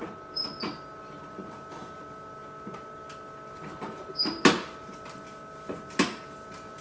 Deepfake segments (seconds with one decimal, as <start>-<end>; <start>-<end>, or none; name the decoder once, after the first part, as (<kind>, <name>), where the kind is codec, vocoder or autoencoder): none